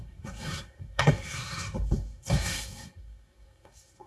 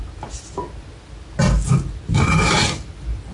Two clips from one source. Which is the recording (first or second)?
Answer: second